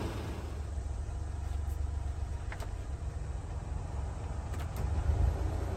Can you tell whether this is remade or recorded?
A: recorded